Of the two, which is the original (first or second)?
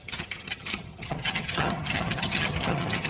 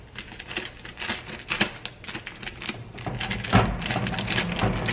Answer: second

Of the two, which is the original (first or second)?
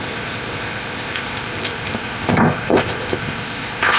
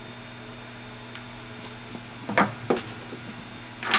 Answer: second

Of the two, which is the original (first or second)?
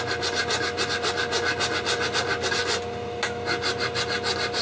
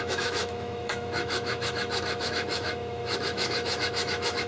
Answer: first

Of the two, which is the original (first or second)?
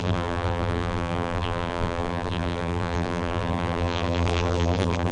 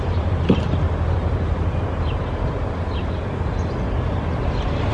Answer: second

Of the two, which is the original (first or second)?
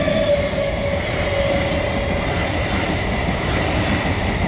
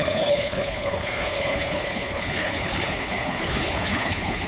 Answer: first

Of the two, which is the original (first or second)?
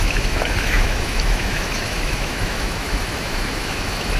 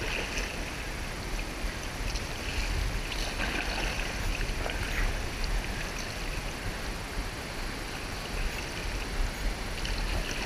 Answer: second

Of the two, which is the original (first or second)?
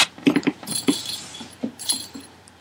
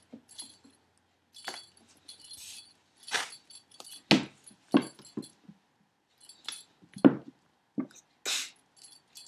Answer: second